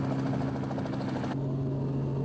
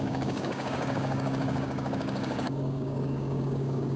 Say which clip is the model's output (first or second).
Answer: second